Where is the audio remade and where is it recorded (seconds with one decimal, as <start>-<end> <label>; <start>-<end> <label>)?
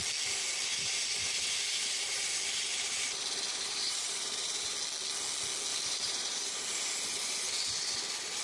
0.0-0.6 recorded; 0.6-4.7 remade; 4.7-5.7 recorded; 5.7-8.4 remade